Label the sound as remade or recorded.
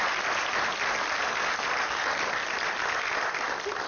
recorded